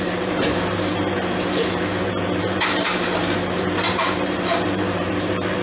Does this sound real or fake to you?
fake